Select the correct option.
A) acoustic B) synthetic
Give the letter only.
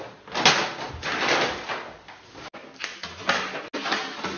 A